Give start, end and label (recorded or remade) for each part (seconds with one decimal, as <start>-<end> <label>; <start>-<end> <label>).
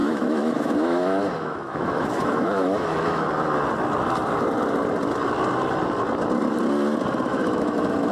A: 0.0-3.3 remade; 3.3-7.3 recorded; 7.3-8.1 remade